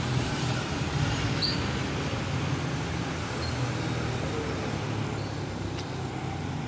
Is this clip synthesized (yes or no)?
no